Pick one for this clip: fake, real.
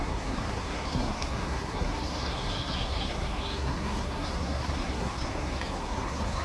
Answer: fake